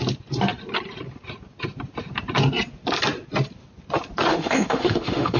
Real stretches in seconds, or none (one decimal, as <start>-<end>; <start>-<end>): 0.0-4.3

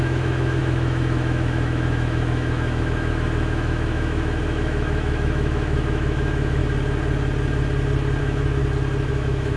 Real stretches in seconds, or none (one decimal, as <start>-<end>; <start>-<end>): 6.6-8.2; 8.6-9.1

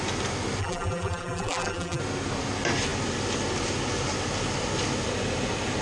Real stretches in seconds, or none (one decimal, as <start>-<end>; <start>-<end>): 0.0-0.6; 2.0-5.8

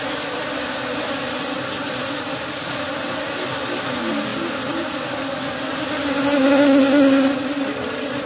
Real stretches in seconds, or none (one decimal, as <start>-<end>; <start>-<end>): 0.0-8.3

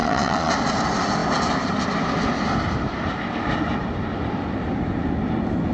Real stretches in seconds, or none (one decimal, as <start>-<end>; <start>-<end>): 0.5-5.7

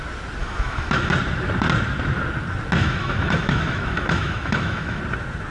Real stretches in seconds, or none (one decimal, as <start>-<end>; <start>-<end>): 0.0-0.4; 1.1-2.8; 5.0-5.5

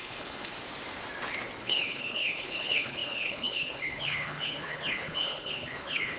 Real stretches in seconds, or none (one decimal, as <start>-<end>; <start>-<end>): 0.5-1.6

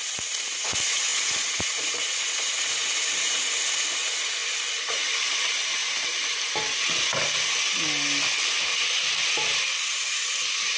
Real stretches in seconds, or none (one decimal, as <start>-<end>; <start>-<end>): 4.4-4.9; 5.8-9.7